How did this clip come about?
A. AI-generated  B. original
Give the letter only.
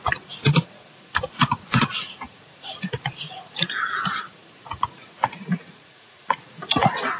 A